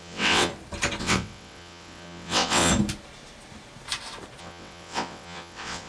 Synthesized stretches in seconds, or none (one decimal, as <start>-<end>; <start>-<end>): 0.0-0.5; 1.0-2.7; 4.4-5.9